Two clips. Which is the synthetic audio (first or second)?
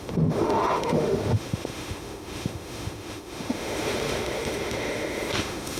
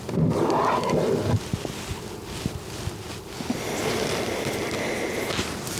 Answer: first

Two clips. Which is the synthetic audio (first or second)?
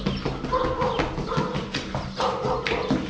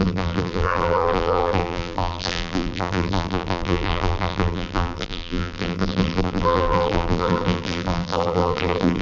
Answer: second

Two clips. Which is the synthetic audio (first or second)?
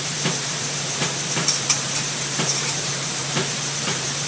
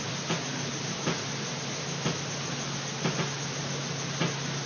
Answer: first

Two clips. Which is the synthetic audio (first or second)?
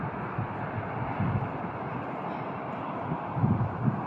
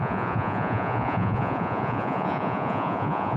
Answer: second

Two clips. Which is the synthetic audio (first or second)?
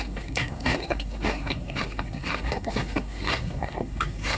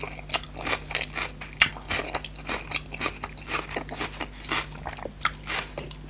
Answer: first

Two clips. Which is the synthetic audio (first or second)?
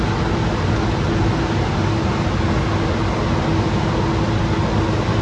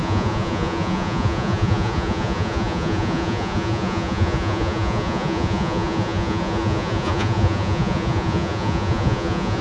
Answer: second